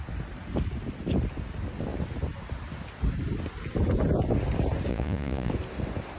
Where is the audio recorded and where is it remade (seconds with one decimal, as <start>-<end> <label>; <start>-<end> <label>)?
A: 0.0-4.9 recorded; 4.9-5.5 remade; 5.5-6.2 recorded

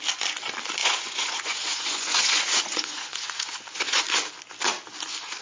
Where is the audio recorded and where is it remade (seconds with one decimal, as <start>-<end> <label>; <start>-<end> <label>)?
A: 0.0-0.8 recorded; 0.8-4.0 remade; 4.0-5.4 recorded

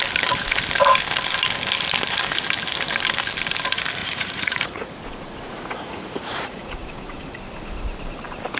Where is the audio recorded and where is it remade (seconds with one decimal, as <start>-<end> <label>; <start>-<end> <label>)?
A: 0.0-4.0 recorded; 4.0-7.4 remade; 7.4-8.6 recorded

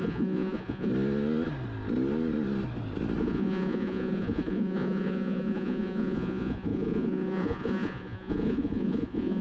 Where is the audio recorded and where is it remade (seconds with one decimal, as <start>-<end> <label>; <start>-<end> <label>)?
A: 0.0-0.9 remade; 0.9-3.2 recorded; 3.2-9.4 remade

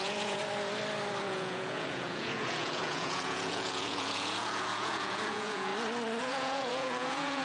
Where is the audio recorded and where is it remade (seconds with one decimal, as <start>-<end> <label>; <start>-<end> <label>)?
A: 0.0-0.4 remade; 0.4-1.2 recorded; 1.2-5.7 remade; 5.7-6.2 recorded; 6.2-7.4 remade

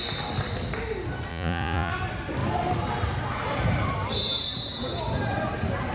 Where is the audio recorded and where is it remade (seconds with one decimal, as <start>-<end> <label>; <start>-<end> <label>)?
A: 0.0-1.3 recorded; 1.3-1.9 remade; 1.9-5.9 recorded

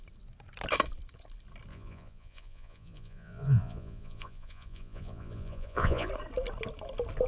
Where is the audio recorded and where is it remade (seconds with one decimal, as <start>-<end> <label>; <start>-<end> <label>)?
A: 0.0-1.7 recorded; 1.7-6.1 remade; 6.1-7.3 recorded